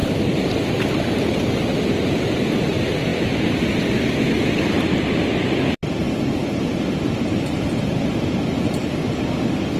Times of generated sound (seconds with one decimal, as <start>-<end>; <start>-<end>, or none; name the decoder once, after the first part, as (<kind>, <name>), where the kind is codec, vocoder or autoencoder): 0.0-9.8 (vocoder, BigVGAN v2)